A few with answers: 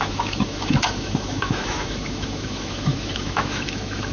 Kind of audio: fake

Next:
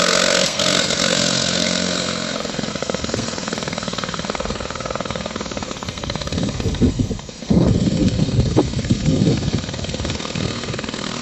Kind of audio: fake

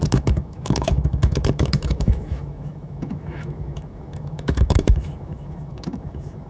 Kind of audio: fake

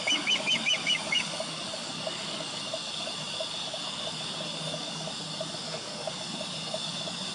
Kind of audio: fake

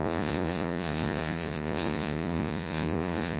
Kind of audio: fake